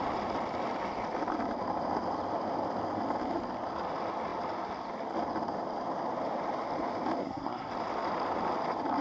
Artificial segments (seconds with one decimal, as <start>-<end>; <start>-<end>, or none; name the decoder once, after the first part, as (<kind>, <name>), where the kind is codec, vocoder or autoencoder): 7.2-7.7 (codec, SNAC)